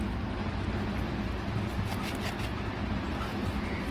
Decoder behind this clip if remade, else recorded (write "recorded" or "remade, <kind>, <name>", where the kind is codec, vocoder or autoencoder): recorded